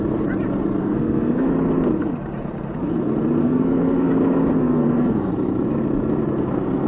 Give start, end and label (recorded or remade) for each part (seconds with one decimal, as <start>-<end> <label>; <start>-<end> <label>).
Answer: 0.0-0.8 recorded; 0.8-1.5 remade; 1.5-3.4 recorded; 3.4-4.1 remade; 4.1-4.6 recorded; 4.6-5.3 remade; 5.3-6.9 recorded